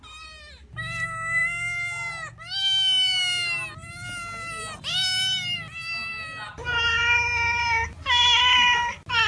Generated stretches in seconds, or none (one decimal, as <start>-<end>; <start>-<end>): none